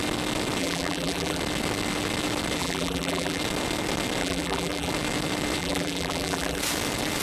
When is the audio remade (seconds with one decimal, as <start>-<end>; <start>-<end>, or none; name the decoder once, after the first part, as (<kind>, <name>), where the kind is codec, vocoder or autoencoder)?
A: 0.6-1.4 (vocoder, BigVGAN v2); 2.6-3.4; 4.2-4.9; 5.6-6.6